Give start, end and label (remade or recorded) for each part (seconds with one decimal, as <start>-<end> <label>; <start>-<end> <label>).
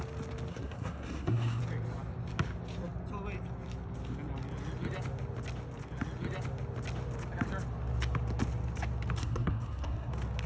0.0-0.5 recorded; 0.5-1.6 remade; 1.6-9.2 recorded; 9.2-10.1 remade; 10.1-10.5 recorded